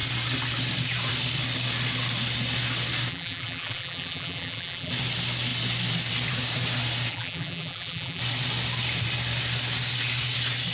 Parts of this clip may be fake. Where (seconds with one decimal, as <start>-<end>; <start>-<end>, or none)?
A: 3.1-4.9; 7.1-8.2